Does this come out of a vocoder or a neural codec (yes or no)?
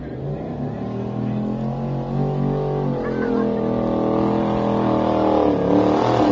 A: no